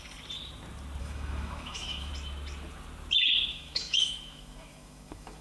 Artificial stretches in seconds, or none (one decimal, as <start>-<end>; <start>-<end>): 1.0-2.1; 3.5-5.4